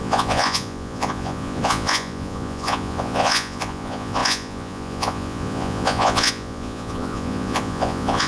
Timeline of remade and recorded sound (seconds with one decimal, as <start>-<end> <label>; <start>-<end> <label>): 0.0-8.3 remade